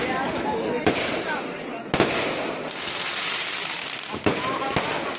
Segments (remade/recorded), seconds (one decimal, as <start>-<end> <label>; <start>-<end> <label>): 0.0-5.2 recorded